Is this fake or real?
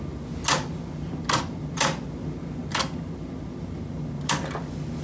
real